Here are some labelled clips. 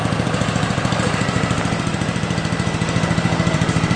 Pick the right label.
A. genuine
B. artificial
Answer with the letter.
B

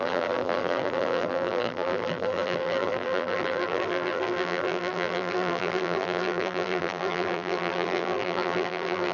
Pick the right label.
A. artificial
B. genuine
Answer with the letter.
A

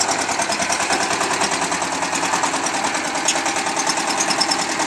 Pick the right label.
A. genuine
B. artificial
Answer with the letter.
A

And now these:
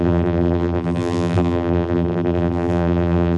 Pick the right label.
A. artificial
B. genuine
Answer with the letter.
A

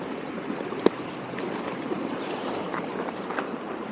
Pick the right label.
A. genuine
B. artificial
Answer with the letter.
A